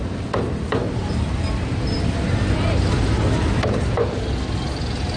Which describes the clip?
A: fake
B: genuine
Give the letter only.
B